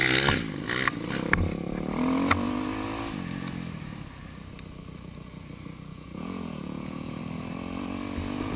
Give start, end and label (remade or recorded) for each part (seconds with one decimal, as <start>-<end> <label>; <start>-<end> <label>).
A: 0.0-5.9 recorded; 5.9-7.2 remade; 7.2-8.6 recorded